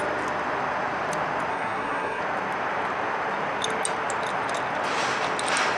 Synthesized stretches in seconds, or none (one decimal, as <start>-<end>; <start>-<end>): 1.5-2.2